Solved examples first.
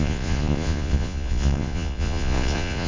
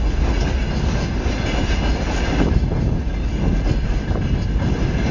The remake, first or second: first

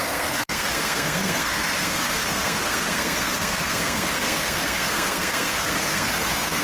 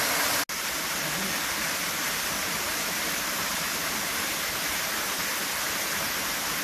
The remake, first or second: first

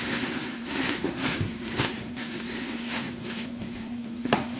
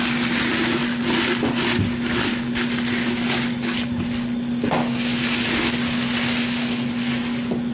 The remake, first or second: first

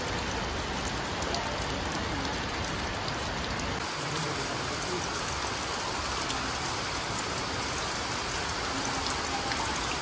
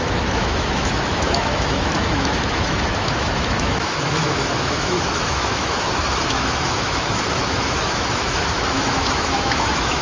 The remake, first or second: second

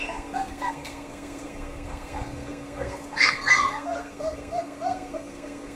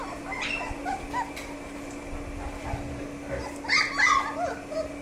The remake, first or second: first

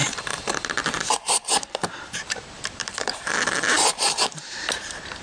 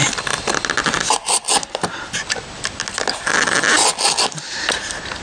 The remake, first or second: first